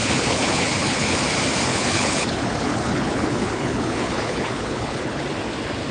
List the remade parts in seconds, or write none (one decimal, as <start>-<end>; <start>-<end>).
0.0-1.2; 1.7-5.2